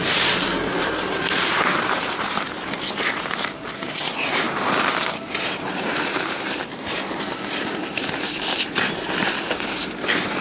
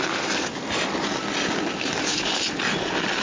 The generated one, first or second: first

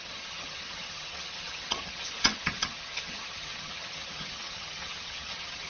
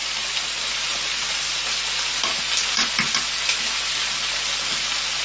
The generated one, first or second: first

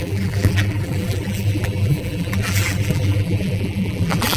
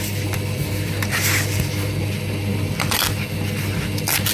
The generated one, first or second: first